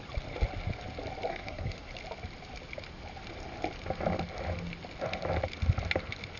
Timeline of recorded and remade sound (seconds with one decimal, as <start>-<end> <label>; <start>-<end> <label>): 0.0-1.3 recorded; 1.3-1.9 remade; 1.9-6.4 recorded